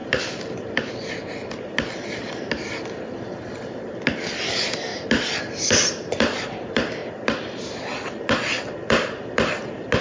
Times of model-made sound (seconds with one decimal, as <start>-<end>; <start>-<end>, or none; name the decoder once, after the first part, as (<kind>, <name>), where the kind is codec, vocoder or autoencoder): none